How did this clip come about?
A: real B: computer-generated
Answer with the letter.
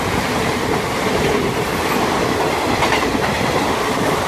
B